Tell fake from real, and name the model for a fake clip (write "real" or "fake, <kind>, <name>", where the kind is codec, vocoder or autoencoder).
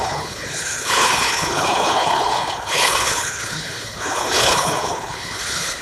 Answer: fake, codec, HILCodec